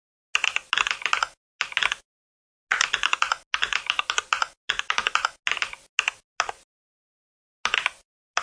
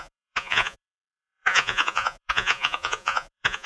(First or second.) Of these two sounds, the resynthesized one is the second